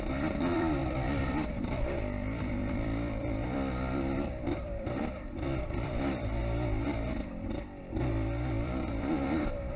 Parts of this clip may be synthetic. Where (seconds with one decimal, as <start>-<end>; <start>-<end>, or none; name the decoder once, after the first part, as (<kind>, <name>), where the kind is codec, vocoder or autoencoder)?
0.0-6.4 (vocoder, BigVGAN v2); 7.8-9.8